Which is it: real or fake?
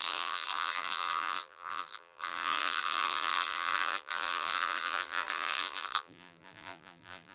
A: fake